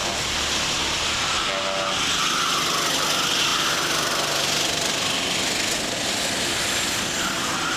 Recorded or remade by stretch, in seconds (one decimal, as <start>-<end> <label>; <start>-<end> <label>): 0.0-7.8 recorded